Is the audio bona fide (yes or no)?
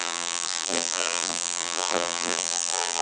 no